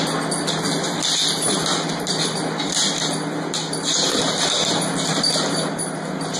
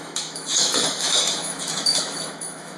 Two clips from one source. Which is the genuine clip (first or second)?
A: first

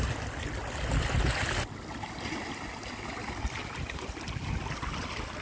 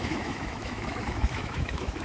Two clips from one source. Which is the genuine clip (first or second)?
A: first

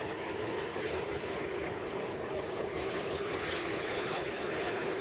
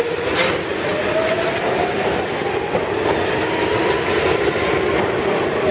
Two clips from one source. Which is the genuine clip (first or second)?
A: second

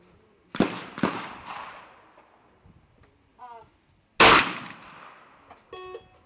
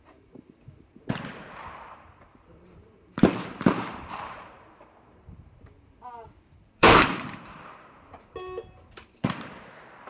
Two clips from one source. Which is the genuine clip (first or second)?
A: first